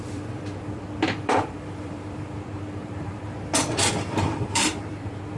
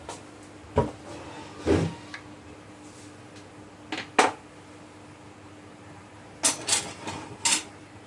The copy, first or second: first